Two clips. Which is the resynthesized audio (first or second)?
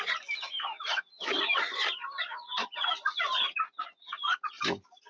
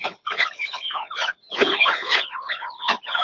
second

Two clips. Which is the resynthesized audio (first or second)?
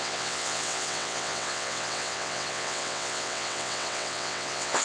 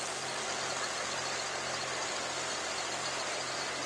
first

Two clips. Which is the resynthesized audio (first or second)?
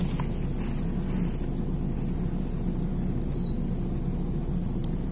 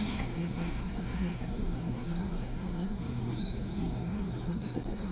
second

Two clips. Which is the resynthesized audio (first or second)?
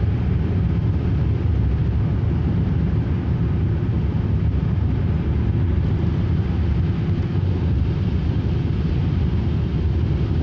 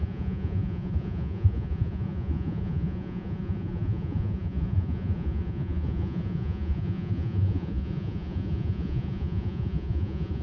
second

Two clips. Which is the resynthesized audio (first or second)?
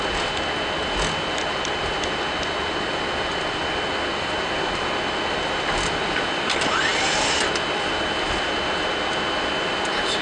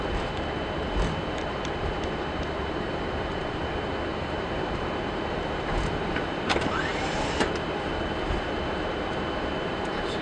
second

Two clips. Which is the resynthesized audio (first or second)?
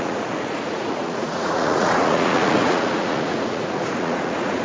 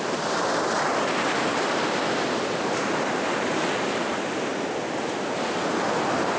first